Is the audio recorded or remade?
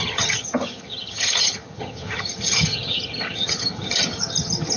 remade